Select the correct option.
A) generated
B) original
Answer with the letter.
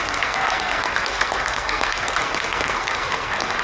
A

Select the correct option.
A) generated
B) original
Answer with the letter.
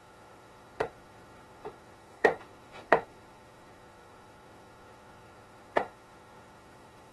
A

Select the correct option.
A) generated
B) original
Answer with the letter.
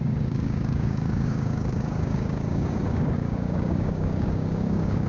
A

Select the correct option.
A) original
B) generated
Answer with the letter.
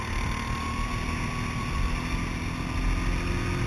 A